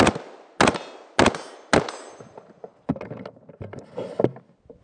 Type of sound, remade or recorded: recorded